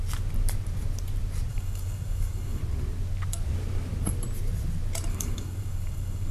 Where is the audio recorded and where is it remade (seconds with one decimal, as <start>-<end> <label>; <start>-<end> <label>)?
0.0-1.5 recorded; 1.5-2.6 remade; 2.6-5.1 recorded; 5.1-6.3 remade